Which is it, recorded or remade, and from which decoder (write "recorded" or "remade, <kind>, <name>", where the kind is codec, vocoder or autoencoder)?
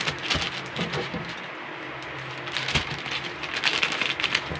recorded